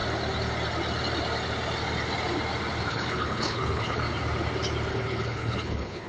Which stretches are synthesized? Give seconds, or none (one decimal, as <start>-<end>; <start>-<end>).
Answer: 2.9-4.0; 4.9-6.1